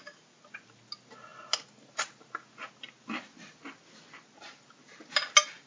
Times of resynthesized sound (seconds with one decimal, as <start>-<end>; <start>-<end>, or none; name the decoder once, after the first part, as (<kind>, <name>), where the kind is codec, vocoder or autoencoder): none